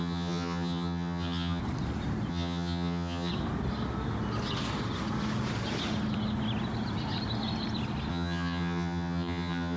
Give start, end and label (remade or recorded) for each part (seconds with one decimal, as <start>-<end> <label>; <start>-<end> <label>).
0.0-1.6 remade; 1.6-2.3 recorded; 2.3-3.3 remade; 3.3-8.1 recorded; 8.1-9.8 remade